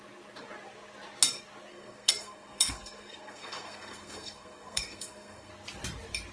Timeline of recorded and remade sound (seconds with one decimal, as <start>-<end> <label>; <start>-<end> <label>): 0.0-1.7 recorded; 1.7-5.5 remade; 5.5-6.3 recorded